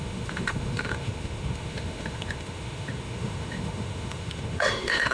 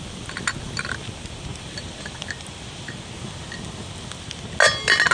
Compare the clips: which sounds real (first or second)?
second